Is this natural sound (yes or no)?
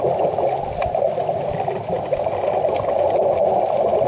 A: yes